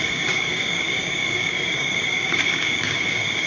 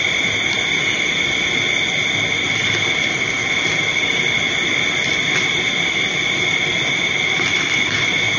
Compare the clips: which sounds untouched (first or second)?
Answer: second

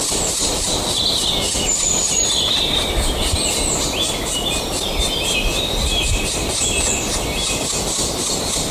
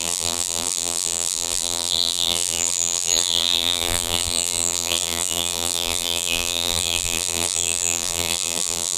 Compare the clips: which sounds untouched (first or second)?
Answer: first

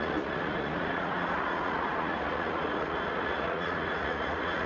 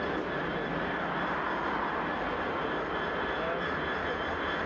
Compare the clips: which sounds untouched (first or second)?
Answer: second